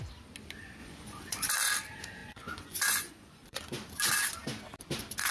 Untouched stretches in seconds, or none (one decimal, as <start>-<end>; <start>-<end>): 0.0-0.8; 1.5-2.2; 3.9-5.3

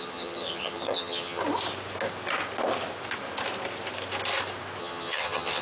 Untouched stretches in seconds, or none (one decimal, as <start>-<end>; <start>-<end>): 1.4-4.8

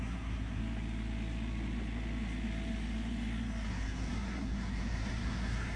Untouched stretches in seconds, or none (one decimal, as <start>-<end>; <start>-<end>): 0.6-3.7

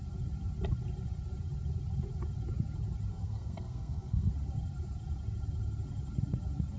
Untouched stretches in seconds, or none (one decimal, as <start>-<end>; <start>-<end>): 0.0-3.1; 4.3-6.8

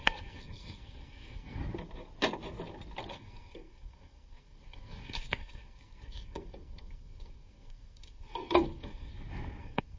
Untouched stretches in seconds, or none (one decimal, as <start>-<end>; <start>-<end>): 1.6-3.1; 9.1-9.6